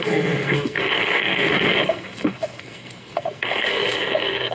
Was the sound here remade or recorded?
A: remade